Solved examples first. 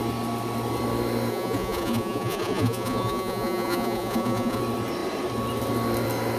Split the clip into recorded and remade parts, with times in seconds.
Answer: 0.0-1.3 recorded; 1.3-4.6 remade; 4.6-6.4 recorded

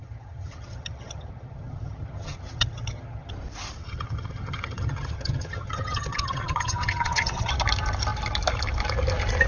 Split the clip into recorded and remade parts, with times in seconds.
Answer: 0.0-3.3 remade; 3.3-3.8 recorded; 3.8-7.5 remade; 7.5-9.5 recorded

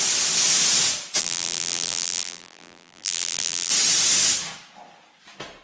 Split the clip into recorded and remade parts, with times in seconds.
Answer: 0.0-1.2 recorded; 1.2-3.7 remade; 3.7-5.6 recorded

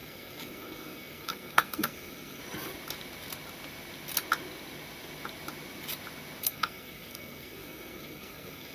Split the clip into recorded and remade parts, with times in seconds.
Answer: 0.0-2.4 remade; 2.4-6.4 recorded; 6.4-8.7 remade

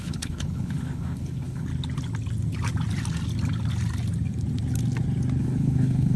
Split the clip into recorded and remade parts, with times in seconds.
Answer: 0.0-1.7 remade; 1.7-5.4 recorded; 5.4-6.2 remade

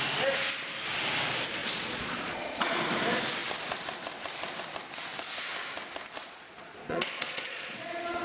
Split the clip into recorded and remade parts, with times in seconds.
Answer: 0.0-1.6 recorded; 1.6-2.8 remade; 2.8-6.2 recorded; 6.2-8.2 remade